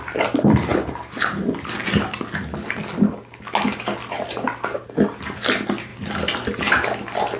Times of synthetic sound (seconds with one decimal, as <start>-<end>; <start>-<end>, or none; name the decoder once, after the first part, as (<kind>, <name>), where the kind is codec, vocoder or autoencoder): none